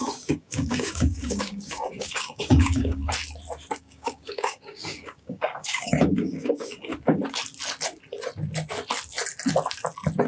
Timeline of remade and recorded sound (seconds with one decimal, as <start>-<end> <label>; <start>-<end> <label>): 0.0-3.0 remade; 3.0-3.8 recorded; 3.8-6.9 remade; 6.9-10.3 recorded